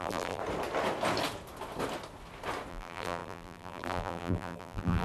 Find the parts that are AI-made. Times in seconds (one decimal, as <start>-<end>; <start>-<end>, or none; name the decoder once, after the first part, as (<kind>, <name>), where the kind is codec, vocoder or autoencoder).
0.0-0.4 (vocoder, BigVGAN v2); 2.7-5.0